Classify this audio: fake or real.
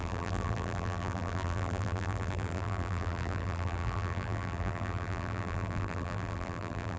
fake